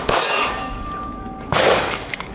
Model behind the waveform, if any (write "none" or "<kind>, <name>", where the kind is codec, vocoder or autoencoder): codec, DAC